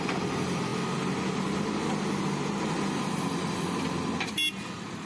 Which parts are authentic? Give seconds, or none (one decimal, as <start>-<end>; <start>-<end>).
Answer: 0.0-5.1